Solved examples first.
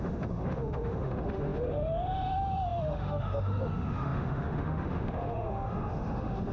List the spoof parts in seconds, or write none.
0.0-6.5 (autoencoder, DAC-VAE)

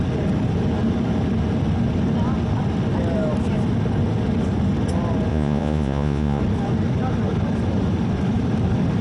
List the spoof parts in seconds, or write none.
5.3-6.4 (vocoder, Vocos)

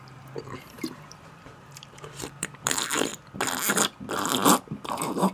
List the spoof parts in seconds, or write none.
0.0-3.1 (vocoder, BigVGAN v2); 4.6-5.3

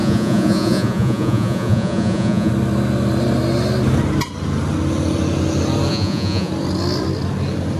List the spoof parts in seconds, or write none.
0.0-2.5 (vocoder, Vocos); 5.9-6.5